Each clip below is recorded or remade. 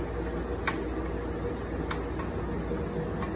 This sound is recorded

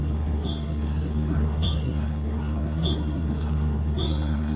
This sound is remade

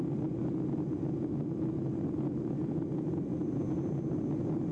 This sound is recorded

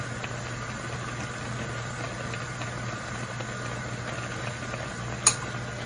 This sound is recorded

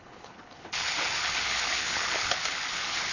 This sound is remade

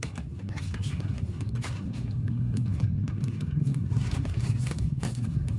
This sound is remade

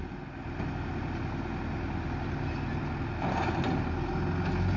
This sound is recorded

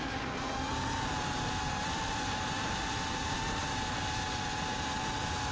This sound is recorded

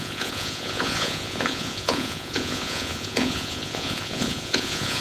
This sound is remade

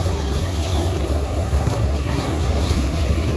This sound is remade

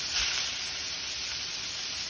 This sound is recorded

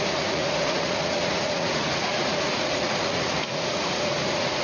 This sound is remade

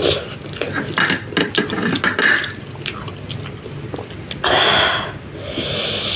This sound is recorded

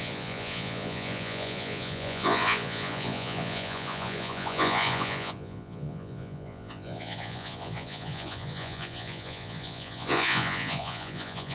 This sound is remade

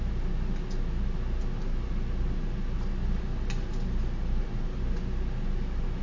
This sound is recorded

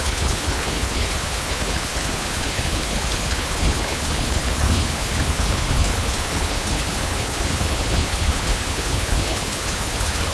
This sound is remade